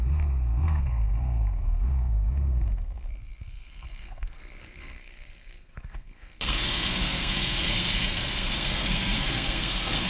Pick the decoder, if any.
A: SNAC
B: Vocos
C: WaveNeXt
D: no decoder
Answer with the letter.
A